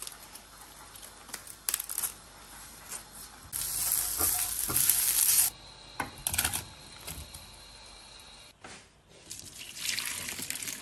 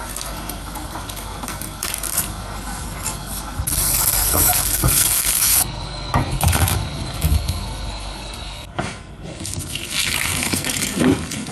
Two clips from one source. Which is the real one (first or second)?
first